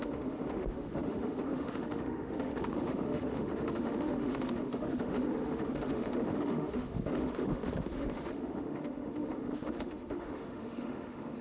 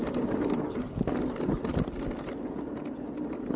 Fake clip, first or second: first